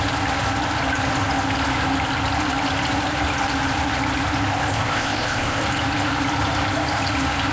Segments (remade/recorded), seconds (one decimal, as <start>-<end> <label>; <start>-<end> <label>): 0.0-4.7 recorded; 4.7-5.6 remade; 5.6-7.5 recorded